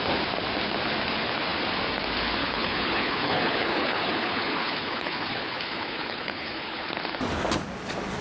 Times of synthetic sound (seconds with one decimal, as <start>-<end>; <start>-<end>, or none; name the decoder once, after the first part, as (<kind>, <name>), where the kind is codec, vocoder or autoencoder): 2.4-6.9 (codec, HILCodec)